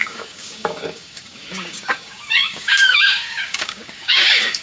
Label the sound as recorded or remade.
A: remade